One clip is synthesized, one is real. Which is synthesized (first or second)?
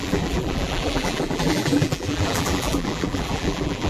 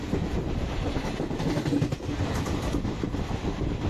first